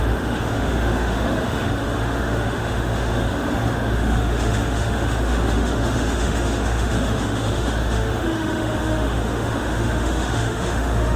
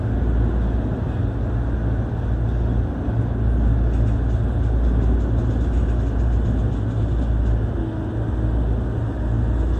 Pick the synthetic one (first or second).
first